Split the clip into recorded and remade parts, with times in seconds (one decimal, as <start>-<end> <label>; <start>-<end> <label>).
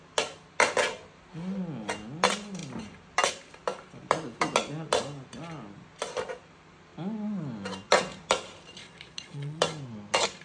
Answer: 0.0-8.8 recorded; 8.8-9.6 remade; 9.6-10.4 recorded